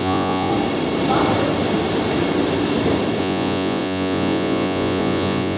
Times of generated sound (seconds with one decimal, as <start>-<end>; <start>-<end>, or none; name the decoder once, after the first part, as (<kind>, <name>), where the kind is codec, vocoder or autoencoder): 0.0-0.5 (vocoder, Vocos); 3.2-5.6